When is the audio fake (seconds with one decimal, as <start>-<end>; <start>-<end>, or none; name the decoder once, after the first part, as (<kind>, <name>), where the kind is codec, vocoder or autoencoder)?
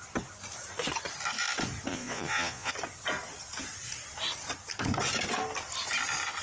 1.9-2.7 (vocoder, Vocos)